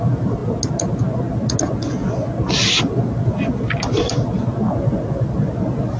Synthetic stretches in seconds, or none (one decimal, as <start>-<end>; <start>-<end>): 0.0-0.4; 2.5-6.0